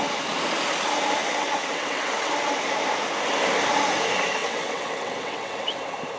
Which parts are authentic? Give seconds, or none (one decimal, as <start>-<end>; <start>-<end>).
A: 0.0-1.2; 2.3-4.4; 5.8-6.2